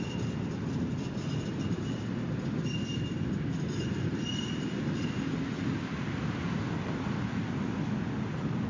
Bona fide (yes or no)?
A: yes